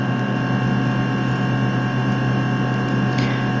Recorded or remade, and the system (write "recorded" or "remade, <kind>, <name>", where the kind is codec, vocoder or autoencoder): recorded